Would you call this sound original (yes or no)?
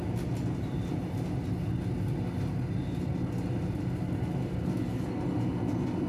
yes